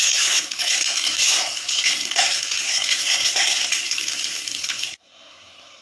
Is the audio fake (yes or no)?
yes